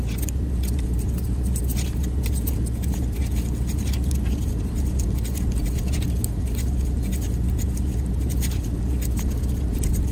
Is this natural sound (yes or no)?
yes